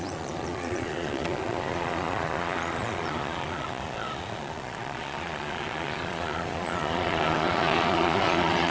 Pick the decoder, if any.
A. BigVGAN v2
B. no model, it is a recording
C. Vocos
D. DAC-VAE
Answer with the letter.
C